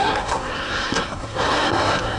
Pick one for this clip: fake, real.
fake